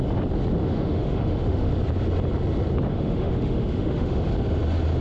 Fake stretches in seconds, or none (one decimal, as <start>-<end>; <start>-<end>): 0.6-1.7; 2.9-4.3